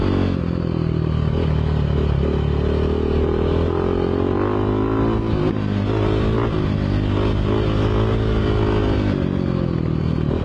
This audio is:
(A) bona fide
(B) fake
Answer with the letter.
A